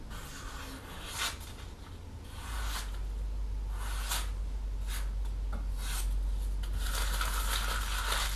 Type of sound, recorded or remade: recorded